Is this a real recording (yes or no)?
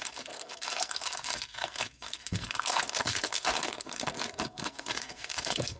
no